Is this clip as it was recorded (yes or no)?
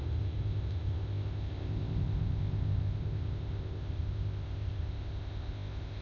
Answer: no